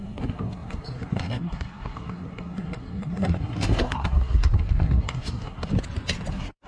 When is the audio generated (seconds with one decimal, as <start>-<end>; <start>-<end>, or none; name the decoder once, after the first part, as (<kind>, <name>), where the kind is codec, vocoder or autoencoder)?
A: 0.0-5.7 (codec, SNAC); 6.3-6.7